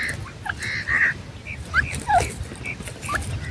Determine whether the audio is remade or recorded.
recorded